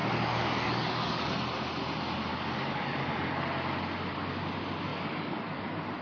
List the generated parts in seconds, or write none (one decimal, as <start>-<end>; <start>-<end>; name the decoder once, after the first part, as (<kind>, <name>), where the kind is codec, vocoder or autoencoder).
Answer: 0.0-1.3 (codec, DAC); 2.3-3.3; 4.9-5.6